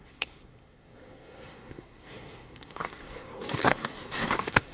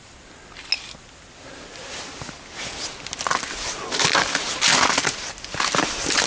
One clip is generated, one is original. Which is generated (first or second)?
first